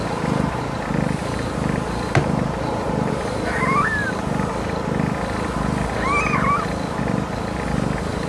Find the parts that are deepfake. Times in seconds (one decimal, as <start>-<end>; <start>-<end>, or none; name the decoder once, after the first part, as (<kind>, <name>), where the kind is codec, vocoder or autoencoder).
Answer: 0.0-3.1 (vocoder, BigVGAN v2)